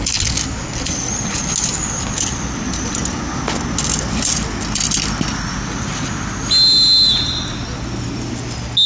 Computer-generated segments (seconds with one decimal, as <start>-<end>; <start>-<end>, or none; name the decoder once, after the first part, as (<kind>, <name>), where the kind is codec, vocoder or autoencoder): none